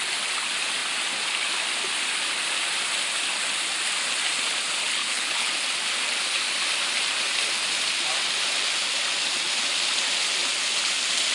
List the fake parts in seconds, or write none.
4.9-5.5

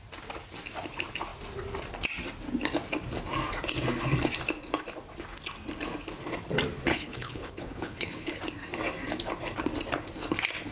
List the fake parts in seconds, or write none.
6.9-8.4

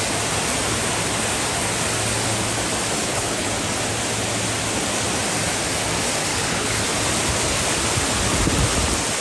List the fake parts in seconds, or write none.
3.0-3.5; 6.3-6.8

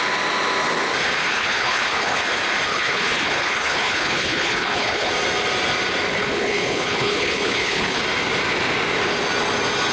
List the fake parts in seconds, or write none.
1.2-2.2; 2.7-5.1; 6.1-8.0

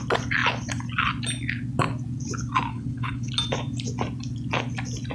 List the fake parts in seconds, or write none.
2.7-3.3